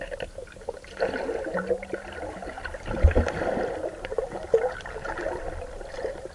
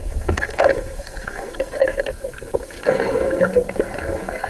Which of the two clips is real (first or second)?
first